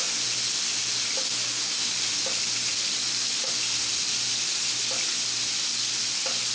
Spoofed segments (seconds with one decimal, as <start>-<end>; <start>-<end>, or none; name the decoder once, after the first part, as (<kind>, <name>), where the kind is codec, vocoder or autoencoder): none